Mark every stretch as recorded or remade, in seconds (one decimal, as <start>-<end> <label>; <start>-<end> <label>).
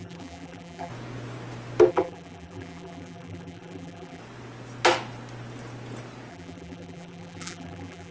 0.0-0.9 remade; 0.9-1.9 recorded; 1.9-4.2 remade; 4.2-6.3 recorded; 6.3-8.1 remade